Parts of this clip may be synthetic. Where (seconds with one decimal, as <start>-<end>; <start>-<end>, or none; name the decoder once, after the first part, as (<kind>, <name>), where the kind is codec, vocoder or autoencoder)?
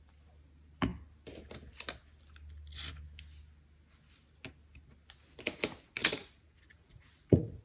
6.0-7.6 (vocoder, Vocos)